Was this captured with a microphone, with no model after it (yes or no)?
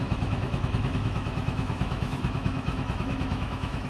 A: no